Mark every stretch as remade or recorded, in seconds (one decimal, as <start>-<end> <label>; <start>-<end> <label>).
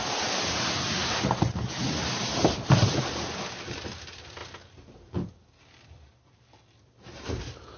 0.0-4.4 remade; 4.4-7.3 recorded; 7.3-7.8 remade